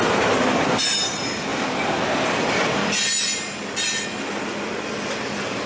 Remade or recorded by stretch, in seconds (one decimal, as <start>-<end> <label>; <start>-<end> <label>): 0.0-5.7 recorded